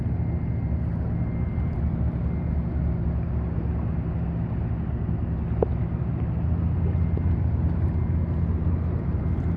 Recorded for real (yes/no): yes